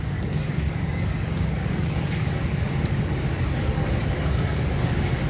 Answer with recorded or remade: remade